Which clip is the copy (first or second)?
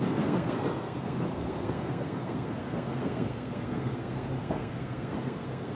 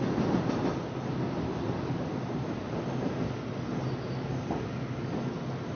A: first